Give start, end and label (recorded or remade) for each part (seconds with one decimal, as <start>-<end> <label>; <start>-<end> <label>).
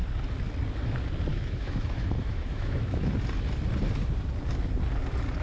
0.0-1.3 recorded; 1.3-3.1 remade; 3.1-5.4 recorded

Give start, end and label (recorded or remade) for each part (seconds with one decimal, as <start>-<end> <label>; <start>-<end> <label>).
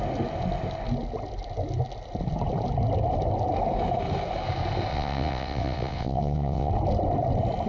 0.0-4.9 recorded; 4.9-6.7 remade; 6.7-7.7 recorded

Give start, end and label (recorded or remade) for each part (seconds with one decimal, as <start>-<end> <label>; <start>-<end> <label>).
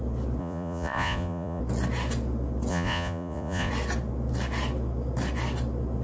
0.0-0.4 recorded; 0.4-1.6 remade; 1.6-2.7 recorded; 2.7-3.7 remade; 3.7-6.0 recorded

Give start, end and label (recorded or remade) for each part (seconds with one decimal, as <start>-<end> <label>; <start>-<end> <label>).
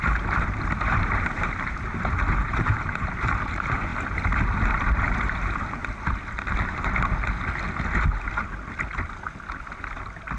0.0-3.9 remade; 3.9-4.5 recorded; 4.5-5.8 remade; 5.8-10.4 recorded